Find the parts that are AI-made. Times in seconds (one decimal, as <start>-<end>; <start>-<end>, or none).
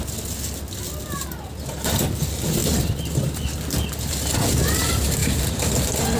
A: 2.6-4.4; 5.2-6.2